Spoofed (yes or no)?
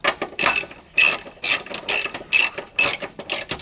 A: no